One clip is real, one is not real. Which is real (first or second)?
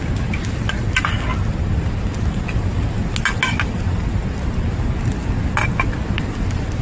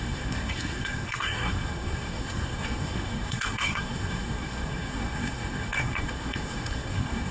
first